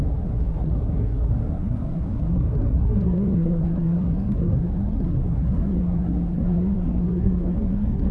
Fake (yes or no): yes